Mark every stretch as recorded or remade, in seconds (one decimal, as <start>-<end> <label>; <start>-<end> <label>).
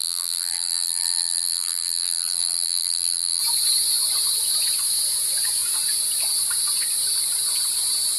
0.0-3.4 remade; 3.4-8.2 recorded